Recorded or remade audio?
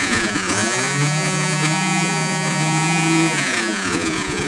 remade